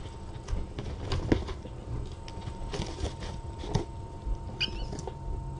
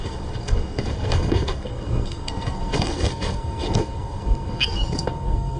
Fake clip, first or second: second